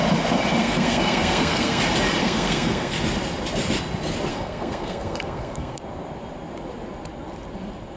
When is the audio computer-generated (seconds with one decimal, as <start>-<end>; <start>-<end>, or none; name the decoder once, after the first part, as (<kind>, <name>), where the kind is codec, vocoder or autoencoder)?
0.6-1.8 (codec, SNAC); 2.2-3.0; 4.3-5.8